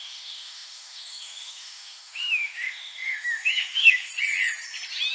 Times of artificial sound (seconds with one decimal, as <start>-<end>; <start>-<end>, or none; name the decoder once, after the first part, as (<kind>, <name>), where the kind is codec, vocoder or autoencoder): 0.0-4.1 (autoencoder, DAC-VAE)